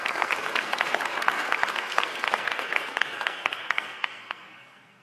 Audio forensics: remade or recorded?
remade